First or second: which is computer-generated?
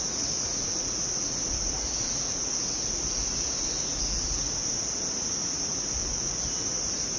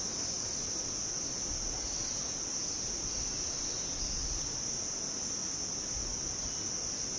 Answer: first